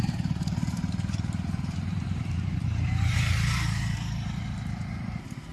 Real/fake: fake